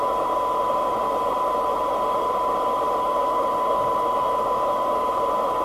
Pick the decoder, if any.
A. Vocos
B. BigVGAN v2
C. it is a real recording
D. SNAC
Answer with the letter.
B